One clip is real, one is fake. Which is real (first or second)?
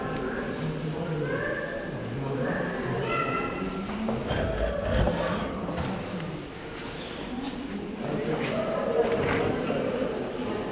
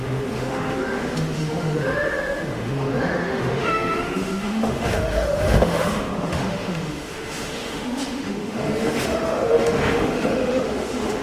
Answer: first